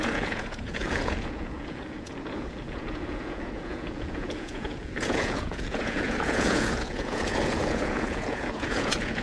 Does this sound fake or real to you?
fake